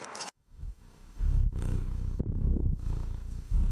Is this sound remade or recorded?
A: remade